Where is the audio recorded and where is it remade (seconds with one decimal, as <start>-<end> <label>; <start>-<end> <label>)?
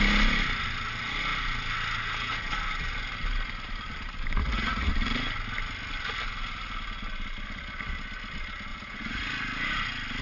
0.0-4.4 recorded; 4.4-4.9 remade; 4.9-8.7 recorded; 8.7-9.3 remade; 9.3-10.2 recorded